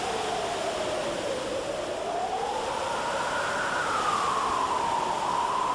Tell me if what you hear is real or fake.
real